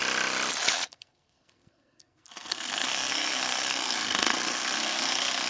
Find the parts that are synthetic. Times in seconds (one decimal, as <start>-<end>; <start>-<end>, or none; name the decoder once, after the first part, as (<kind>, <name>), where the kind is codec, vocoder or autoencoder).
0.7-5.5 (codec, SNAC)